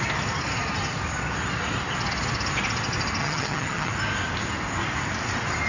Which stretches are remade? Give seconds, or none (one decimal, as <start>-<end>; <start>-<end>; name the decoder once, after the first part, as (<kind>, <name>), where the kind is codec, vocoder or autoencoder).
3.2-3.9 (vocoder, HiFi-GAN)

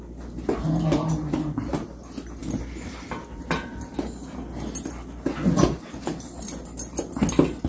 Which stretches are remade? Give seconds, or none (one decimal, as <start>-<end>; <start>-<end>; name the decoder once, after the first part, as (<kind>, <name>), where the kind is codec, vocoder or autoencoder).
none

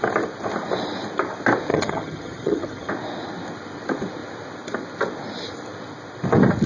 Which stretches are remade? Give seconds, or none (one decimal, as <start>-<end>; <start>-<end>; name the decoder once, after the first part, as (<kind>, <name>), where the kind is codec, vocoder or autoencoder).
1.7-2.9 (vocoder, HiFi-GAN)

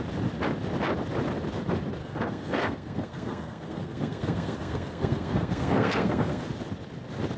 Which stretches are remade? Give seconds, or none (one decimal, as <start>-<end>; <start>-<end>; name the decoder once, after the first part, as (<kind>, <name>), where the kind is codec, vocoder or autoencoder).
2.0-6.4 (codec, SNAC)

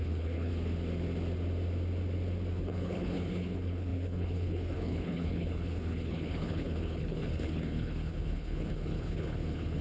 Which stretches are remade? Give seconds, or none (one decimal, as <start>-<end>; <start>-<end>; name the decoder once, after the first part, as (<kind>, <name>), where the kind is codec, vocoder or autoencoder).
0.0-0.5 (codec, HILCodec); 2.5-9.8

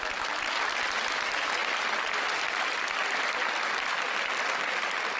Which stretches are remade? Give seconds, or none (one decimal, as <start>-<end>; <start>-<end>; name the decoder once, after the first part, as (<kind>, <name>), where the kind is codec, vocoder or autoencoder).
1.6-4.7 (vocoder, BigVGAN v2)